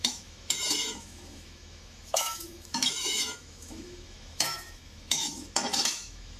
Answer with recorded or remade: remade